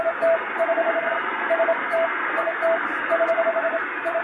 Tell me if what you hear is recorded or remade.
recorded